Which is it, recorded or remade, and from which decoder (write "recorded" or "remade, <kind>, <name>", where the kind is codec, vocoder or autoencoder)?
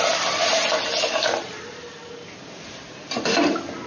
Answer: recorded